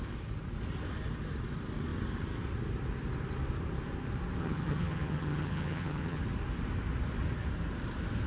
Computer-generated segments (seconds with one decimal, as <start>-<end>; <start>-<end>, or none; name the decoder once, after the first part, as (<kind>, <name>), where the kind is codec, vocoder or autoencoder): 4.4-6.2 (vocoder, HiFi-GAN)